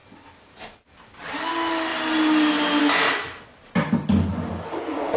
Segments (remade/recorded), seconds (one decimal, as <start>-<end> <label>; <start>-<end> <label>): 0.0-1.5 remade; 1.5-1.9 recorded; 1.9-2.8 remade; 2.8-5.2 recorded

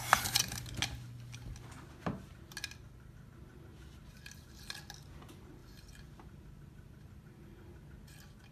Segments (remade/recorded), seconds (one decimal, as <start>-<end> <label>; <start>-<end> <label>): 0.0-8.5 recorded

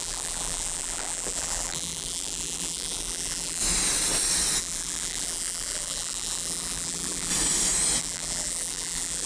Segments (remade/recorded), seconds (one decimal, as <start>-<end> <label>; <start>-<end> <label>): 0.0-3.6 remade; 3.6-4.6 recorded; 4.6-7.3 remade; 7.3-8.0 recorded; 8.0-9.3 remade